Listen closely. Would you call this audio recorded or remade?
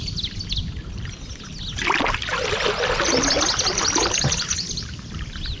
recorded